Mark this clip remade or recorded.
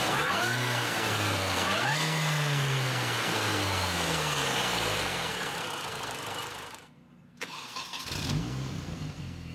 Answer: remade